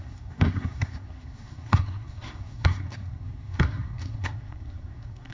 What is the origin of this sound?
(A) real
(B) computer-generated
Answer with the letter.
B